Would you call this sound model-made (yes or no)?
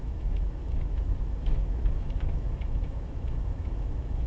yes